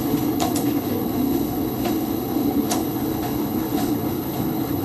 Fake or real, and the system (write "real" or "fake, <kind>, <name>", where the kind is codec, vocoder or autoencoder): fake, codec, HILCodec